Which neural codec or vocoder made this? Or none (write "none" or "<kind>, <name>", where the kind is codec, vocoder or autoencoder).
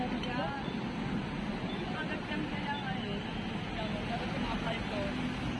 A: none